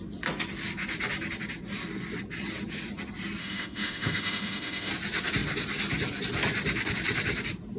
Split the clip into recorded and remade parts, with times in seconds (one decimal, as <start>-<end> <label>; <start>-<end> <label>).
0.0-3.4 recorded; 3.4-4.9 remade; 4.9-7.8 recorded